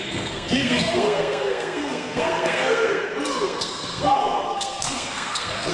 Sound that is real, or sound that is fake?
fake